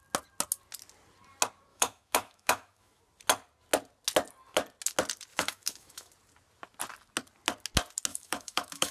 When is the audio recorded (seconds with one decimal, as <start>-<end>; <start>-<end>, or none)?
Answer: 0.0-1.7; 3.0-5.3; 6.1-8.1